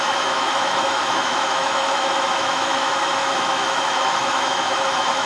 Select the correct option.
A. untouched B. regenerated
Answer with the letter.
B